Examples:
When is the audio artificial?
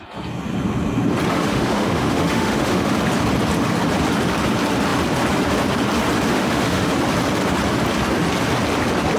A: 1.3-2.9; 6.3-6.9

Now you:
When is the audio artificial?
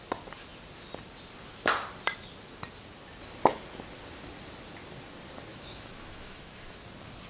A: 5.5-6.8